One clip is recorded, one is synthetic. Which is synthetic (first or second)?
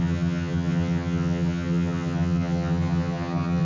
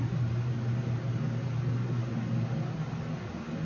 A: first